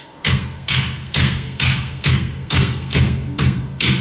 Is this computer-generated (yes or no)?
yes